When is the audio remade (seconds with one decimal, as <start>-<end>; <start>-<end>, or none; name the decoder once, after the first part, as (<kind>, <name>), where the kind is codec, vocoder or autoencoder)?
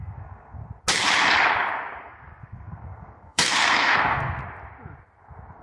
0.0-0.6 (codec, SNAC); 2.0-4.4